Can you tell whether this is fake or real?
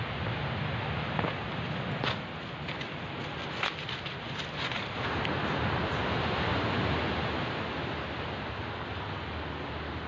real